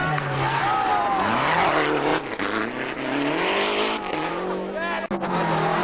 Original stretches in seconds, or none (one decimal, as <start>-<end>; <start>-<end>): 0.6-5.8